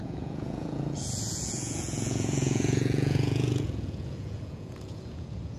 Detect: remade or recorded remade